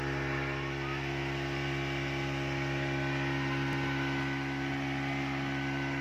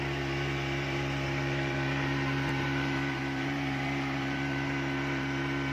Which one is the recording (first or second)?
first